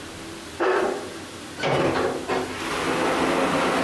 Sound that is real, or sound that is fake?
real